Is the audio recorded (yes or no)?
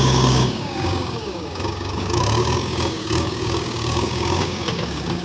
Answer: no